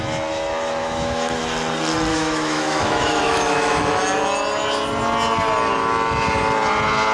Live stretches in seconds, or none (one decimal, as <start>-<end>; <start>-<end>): 0.0-0.8; 1.4-2.1; 4.0-7.1